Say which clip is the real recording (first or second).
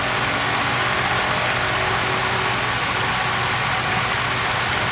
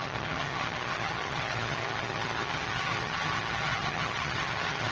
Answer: first